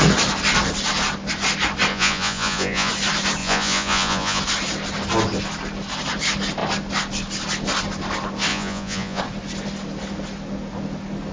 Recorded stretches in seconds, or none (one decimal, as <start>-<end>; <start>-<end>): 0.0-1.9; 2.9-3.4; 4.4-8.5; 9.2-11.3